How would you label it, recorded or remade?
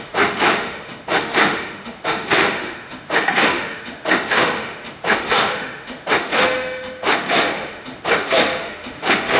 remade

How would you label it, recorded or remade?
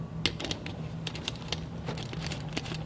recorded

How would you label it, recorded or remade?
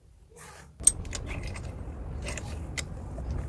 recorded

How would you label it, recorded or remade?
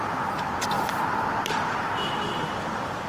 recorded